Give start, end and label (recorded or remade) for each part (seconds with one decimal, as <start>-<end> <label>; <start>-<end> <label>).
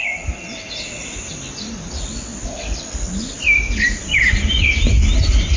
0.0-5.6 recorded